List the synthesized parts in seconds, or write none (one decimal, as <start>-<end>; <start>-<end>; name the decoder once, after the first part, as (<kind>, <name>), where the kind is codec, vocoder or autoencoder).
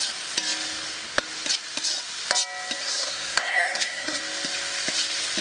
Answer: 2.8-4.2 (codec, SNAC)